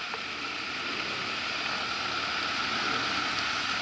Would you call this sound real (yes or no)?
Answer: yes